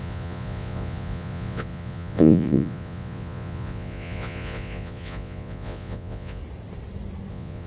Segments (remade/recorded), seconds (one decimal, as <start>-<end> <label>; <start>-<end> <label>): 0.0-6.4 remade; 6.4-7.3 recorded; 7.3-7.7 remade